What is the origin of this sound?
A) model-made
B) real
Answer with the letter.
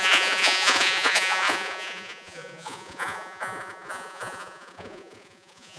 A